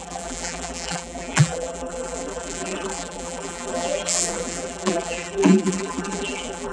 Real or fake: fake